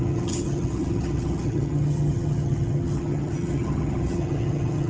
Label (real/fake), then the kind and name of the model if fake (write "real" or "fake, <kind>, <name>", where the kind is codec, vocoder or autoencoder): fake, vocoder, HiFi-GAN